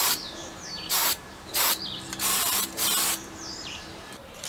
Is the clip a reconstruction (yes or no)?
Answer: yes